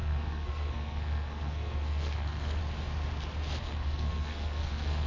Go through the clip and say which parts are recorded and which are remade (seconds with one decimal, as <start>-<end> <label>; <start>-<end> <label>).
0.0-2.6 remade; 2.6-3.6 recorded; 3.6-5.1 remade